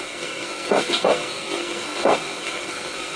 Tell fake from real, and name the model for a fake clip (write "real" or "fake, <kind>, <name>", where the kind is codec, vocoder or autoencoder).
fake, codec, SNAC